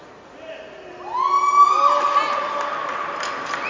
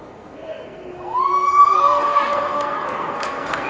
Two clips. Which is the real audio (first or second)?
first